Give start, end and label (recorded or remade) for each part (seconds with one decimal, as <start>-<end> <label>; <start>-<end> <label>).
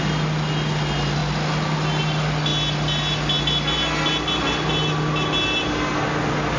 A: 0.0-6.6 recorded